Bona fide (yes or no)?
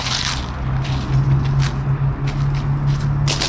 yes